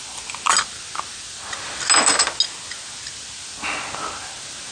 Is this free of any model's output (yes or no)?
yes